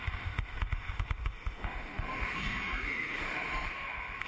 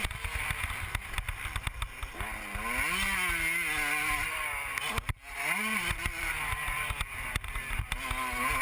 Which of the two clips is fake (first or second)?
first